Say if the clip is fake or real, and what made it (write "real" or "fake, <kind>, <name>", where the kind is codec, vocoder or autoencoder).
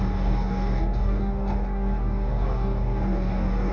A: fake, codec, DAC